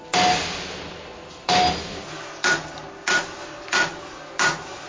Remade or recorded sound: recorded